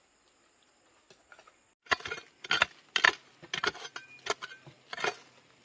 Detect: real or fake real